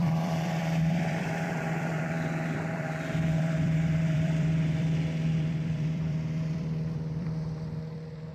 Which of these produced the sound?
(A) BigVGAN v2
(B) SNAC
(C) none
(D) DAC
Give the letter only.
A